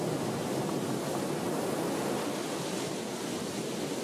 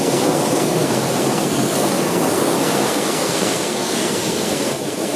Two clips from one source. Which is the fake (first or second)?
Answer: second